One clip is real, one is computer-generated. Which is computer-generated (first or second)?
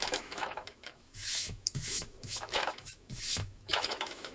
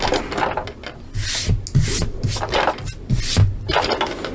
first